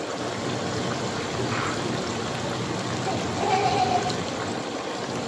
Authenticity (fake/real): real